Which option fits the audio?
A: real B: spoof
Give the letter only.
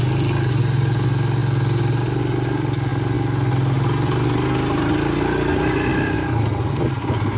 A